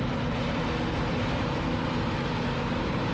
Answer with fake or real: real